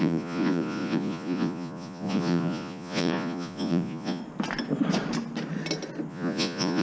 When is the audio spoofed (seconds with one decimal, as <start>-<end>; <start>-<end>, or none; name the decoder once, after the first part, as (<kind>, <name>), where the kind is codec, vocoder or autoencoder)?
0.0-4.2 (vocoder, Vocos); 6.1-6.8